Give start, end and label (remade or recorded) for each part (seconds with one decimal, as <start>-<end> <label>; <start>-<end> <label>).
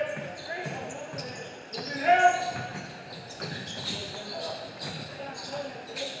0.0-6.2 recorded